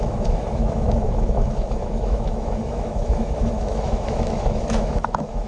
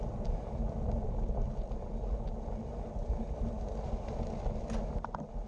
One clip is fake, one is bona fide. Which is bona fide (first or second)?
second